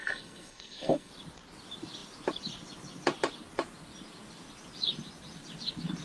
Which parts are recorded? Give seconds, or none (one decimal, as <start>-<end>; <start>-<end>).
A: 1.1-6.0